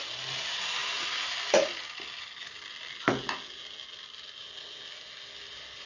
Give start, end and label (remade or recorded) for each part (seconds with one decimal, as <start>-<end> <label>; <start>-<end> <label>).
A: 0.0-5.9 recorded